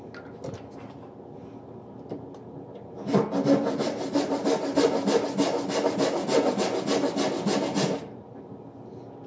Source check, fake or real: real